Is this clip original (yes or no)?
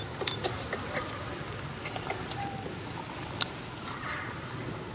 yes